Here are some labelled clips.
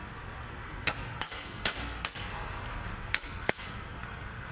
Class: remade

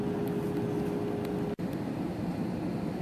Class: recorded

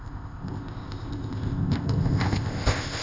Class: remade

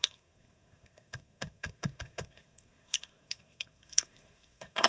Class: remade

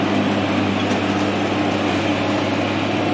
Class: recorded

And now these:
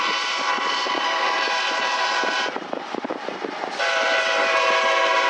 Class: remade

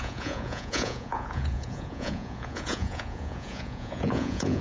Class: remade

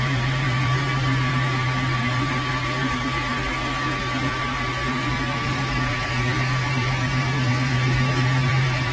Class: remade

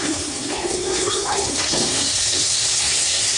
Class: remade